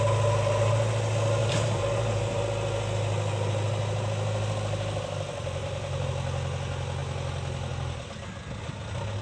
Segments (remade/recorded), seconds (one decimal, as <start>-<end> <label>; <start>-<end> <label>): 0.0-1.4 recorded; 1.4-2.4 remade; 2.4-5.6 recorded; 5.6-6.1 remade; 6.1-9.2 recorded